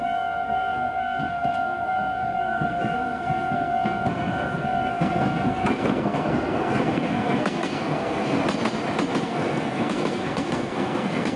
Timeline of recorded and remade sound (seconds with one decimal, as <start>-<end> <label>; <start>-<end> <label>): 0.0-8.4 remade; 8.4-9.2 recorded; 9.2-11.4 remade